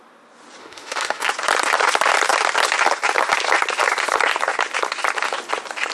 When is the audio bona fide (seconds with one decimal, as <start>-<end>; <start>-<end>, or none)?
0.0-0.6; 1.3-5.9